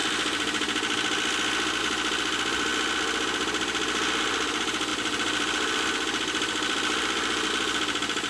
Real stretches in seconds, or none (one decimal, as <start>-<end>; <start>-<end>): 0.0-1.8; 2.7-4.2